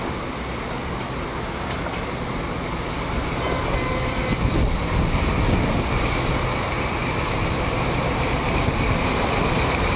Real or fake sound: real